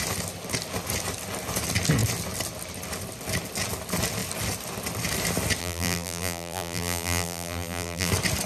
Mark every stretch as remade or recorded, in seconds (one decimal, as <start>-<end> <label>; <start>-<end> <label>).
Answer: 0.0-5.6 recorded; 5.6-8.1 remade; 8.1-8.5 recorded